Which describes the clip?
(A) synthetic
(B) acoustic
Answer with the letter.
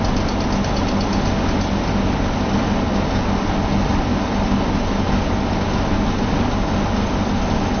B